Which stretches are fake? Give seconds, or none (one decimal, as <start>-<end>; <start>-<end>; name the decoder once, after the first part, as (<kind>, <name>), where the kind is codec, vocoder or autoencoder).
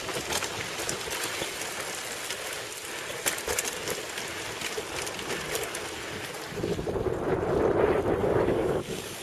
8.2-9.2 (codec, DAC)